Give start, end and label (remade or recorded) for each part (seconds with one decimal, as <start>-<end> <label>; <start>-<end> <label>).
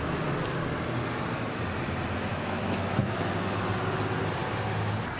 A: 0.0-2.3 recorded; 2.3-3.3 remade; 3.3-5.2 recorded